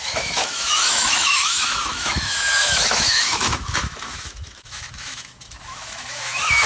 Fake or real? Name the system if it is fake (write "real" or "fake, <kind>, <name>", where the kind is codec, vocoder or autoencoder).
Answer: fake, autoencoder, DAC-VAE